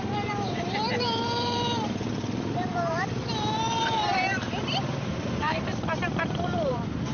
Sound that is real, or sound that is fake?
fake